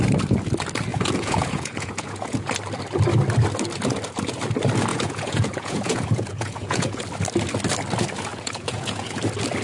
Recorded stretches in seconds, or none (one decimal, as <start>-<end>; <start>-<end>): 0.0-0.9; 2.5-4.9; 7.0-8.3; 9.2-9.6